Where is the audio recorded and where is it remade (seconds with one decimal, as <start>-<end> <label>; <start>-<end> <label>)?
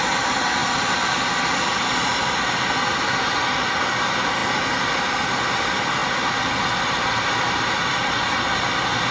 0.0-9.1 recorded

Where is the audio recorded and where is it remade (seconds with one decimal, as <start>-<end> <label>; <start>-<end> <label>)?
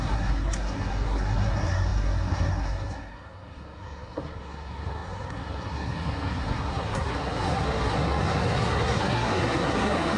0.0-10.2 remade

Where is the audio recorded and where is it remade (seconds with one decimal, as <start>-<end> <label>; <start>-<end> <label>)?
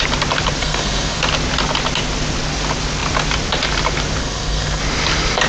0.0-0.6 recorded; 0.6-1.2 remade; 1.2-4.2 recorded; 4.2-4.8 remade; 4.8-5.5 recorded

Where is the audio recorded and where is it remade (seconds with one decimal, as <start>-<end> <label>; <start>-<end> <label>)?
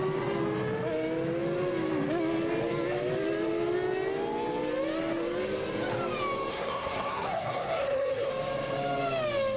0.0-6.5 recorded; 6.5-8.3 remade; 8.3-9.6 recorded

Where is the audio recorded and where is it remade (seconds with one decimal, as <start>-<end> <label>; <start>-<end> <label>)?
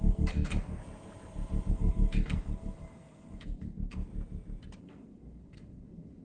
0.0-0.8 remade; 0.8-1.7 recorded; 1.7-4.1 remade; 4.1-4.8 recorded; 4.8-6.2 remade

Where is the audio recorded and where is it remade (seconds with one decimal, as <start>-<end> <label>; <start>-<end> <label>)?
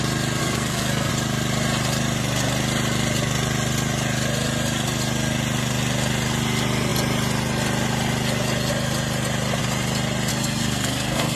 0.0-0.4 recorded; 0.4-1.1 remade; 1.1-10.3 recorded; 10.3-11.4 remade